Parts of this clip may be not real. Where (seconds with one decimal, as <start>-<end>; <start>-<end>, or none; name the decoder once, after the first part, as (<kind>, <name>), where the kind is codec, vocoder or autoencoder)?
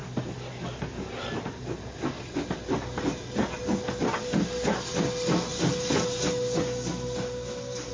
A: none